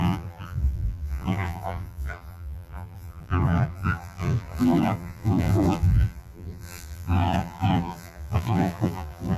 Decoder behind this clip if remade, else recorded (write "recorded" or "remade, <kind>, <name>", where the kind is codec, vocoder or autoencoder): remade, vocoder, BigVGAN v2